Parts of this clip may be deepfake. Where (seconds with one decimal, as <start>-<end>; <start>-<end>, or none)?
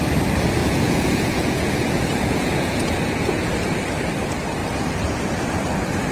0.6-3.5